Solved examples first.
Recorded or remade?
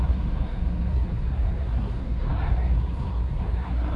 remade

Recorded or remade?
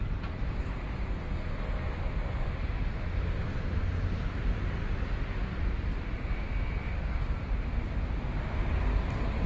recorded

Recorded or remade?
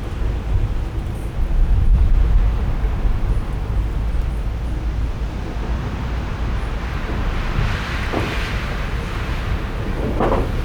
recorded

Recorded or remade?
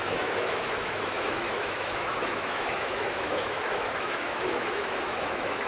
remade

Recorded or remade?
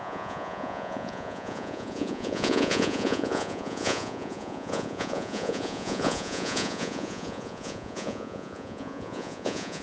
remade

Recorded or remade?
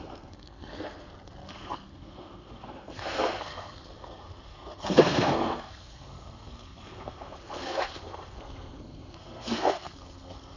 remade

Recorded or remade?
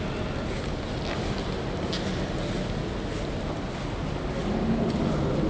recorded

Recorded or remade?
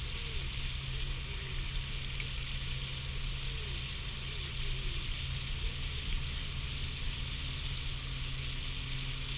recorded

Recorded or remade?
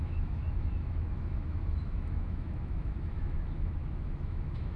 remade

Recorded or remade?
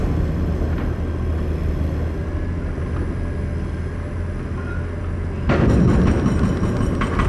recorded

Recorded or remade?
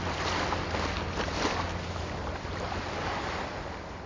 recorded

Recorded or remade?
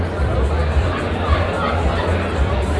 recorded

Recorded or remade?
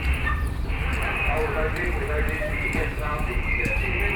remade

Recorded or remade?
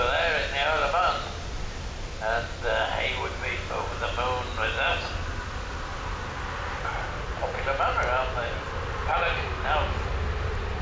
recorded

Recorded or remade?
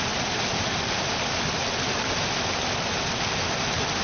recorded